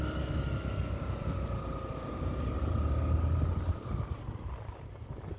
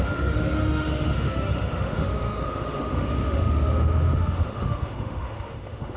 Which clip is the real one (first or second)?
first